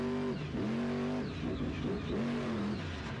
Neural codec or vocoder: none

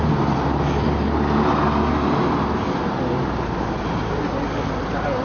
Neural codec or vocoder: none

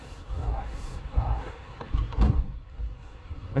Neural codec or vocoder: codec, SNAC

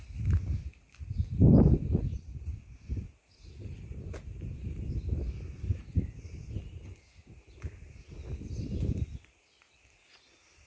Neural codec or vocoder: none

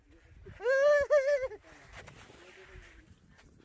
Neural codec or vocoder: none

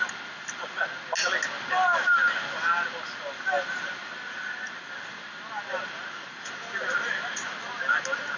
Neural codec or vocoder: none